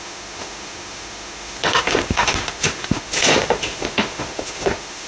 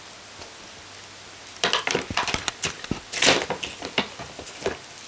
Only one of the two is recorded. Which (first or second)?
second